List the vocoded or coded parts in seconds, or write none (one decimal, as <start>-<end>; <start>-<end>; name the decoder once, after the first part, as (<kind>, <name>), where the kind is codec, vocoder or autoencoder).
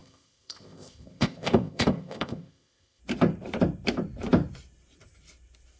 0.0-3.0 (codec, ZipCodec)